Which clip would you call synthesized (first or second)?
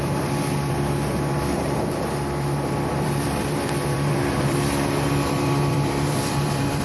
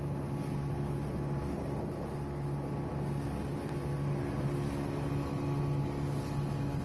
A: first